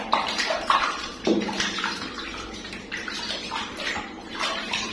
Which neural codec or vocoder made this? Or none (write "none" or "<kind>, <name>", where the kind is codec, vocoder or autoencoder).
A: vocoder, BigVGAN v2